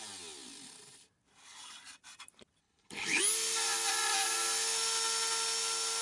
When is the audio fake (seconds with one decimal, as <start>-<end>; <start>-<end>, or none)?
2.6-3.2